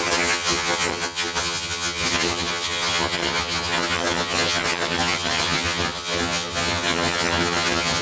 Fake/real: fake